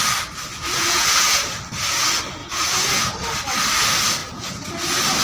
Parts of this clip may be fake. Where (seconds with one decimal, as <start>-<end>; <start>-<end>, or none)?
0.5-1.5; 2.4-3.0; 4.2-4.7